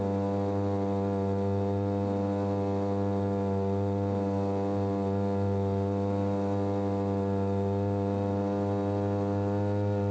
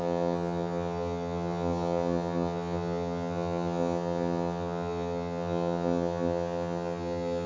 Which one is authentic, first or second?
first